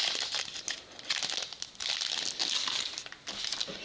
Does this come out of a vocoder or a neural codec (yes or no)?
no